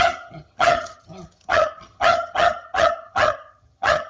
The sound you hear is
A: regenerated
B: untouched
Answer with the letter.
A